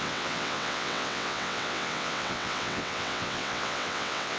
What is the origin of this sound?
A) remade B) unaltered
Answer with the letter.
A